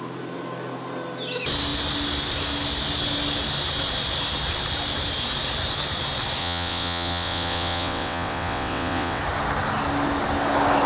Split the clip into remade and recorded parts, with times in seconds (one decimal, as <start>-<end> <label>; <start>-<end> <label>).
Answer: 0.0-6.4 recorded; 6.4-9.2 remade; 9.2-10.9 recorded